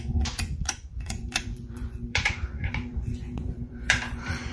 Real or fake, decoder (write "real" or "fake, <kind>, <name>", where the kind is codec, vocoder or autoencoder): fake, vocoder, Vocos